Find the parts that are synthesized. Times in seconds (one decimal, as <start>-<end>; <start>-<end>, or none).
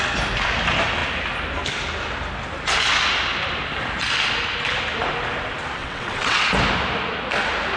5.8-6.4